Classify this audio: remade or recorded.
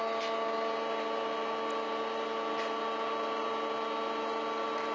recorded